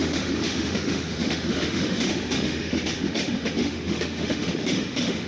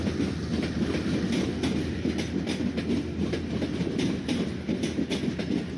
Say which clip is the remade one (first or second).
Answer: first